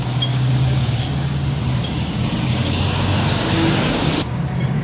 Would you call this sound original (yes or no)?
no